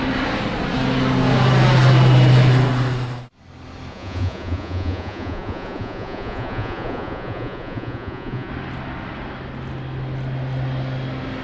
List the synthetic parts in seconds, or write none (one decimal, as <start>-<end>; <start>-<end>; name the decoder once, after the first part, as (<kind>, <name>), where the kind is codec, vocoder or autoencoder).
3.9-8.5 (vocoder, Vocos)

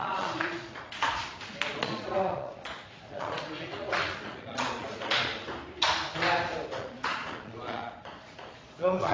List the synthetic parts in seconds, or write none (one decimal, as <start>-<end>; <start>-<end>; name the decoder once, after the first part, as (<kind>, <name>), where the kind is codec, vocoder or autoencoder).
0.0-1.2 (vocoder, Vocos); 1.7-5.4; 6.7-9.1